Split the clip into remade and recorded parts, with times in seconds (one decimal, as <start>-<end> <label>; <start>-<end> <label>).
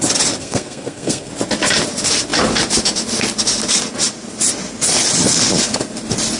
0.0-0.4 recorded; 0.4-1.3 remade; 1.3-6.4 recorded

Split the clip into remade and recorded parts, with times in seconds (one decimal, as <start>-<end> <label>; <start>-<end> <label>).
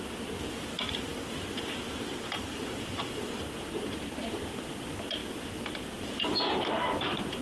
0.0-1.1 recorded; 1.1-4.7 remade; 4.7-5.2 recorded; 5.2-6.9 remade; 6.9-7.4 recorded